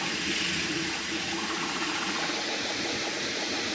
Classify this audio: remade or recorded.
remade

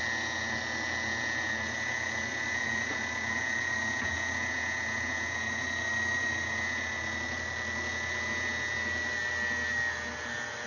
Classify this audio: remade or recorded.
recorded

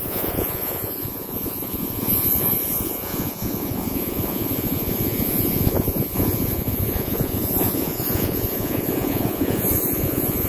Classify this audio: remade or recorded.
remade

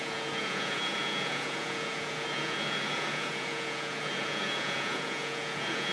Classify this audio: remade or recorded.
remade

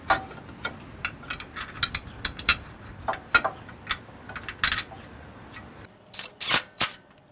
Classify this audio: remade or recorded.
recorded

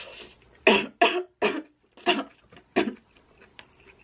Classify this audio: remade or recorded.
recorded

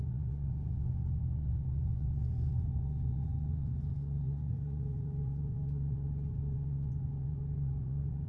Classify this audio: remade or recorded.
remade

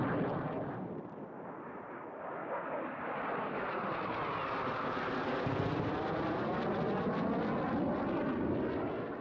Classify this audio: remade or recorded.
recorded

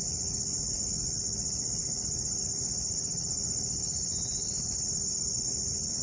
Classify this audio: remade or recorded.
recorded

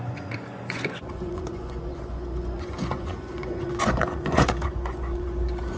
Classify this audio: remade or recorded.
remade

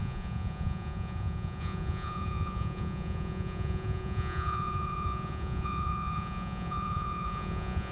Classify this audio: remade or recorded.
remade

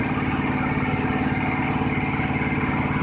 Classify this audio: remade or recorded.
recorded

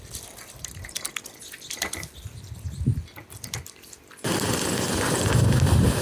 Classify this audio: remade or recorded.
recorded